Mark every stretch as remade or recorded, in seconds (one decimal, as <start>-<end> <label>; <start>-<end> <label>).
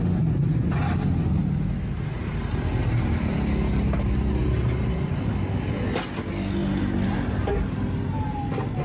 0.0-2.8 recorded; 2.8-3.3 remade; 3.3-6.6 recorded; 6.6-7.5 remade; 7.5-8.8 recorded